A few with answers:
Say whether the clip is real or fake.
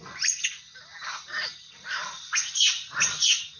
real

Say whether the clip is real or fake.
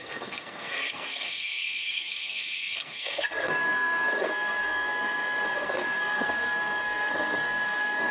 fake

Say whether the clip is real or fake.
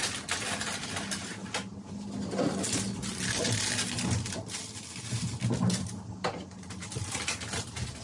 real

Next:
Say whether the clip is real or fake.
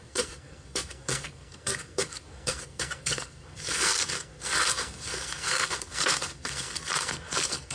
fake